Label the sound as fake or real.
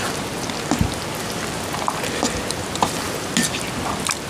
real